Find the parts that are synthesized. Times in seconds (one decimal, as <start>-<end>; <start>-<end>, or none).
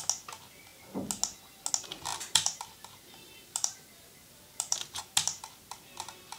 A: 2.1-5.0